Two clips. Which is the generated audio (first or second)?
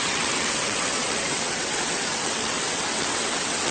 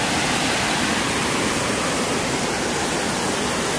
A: first